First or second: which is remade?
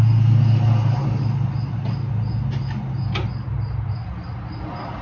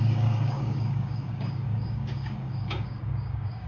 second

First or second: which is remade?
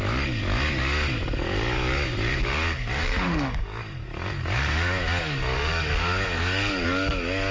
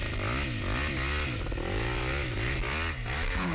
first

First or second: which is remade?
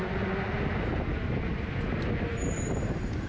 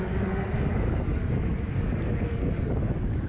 second